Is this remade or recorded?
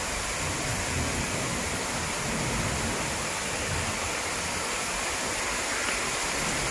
recorded